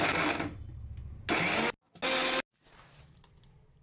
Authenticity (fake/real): real